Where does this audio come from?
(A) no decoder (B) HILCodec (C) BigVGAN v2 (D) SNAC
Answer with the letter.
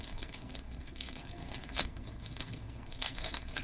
D